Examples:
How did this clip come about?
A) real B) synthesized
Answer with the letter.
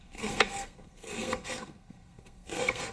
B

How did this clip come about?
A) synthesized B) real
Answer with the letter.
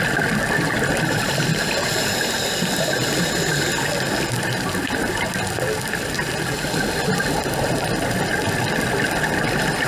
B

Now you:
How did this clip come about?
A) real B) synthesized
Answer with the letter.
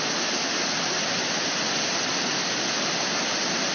A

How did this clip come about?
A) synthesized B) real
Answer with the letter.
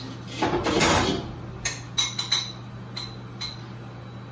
B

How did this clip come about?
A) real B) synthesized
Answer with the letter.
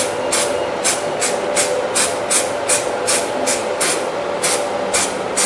A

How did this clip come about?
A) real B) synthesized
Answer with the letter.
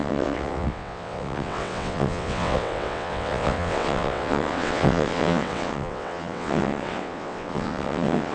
B